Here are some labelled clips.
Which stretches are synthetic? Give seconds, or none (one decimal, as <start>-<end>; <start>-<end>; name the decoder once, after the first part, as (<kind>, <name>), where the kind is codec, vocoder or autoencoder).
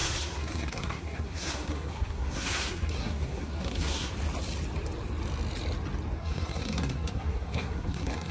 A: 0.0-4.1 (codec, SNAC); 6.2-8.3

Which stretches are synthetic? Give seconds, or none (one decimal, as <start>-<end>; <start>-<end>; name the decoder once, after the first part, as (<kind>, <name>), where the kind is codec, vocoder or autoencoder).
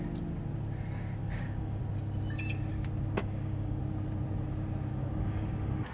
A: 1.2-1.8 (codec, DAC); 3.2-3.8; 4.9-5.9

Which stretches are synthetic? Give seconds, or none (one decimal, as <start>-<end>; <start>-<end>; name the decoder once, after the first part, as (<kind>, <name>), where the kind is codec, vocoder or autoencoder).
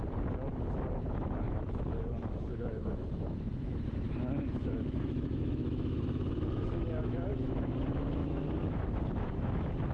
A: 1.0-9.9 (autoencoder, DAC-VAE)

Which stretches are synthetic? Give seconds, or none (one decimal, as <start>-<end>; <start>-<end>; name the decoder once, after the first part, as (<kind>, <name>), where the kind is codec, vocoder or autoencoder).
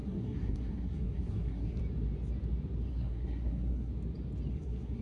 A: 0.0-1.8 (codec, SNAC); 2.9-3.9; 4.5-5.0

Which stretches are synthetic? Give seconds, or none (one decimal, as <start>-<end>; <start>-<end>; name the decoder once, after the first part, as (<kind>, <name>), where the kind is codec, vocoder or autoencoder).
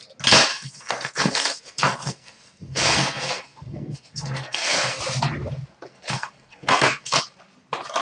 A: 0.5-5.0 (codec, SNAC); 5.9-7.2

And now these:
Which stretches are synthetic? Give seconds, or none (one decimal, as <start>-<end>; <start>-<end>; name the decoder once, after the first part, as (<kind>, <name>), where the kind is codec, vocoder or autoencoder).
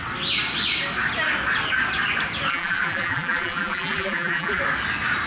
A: 2.5-4.6 (vocoder, BigVGAN v2)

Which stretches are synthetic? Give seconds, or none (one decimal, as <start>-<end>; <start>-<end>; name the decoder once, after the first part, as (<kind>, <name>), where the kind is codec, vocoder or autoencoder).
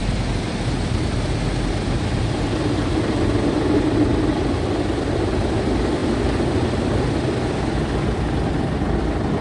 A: none